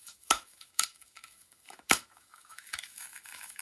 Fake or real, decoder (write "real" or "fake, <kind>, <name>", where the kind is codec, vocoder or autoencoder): fake, autoencoder, DAC-VAE